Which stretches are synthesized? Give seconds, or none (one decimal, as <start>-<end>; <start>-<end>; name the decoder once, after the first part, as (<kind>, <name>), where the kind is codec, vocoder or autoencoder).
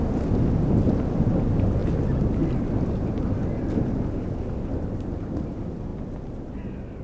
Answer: none